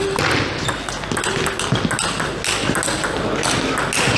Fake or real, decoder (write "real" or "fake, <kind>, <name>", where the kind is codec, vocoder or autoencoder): real